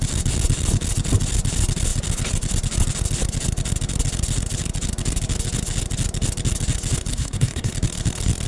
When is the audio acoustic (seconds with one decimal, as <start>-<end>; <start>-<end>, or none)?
0.0-7.1; 7.7-8.5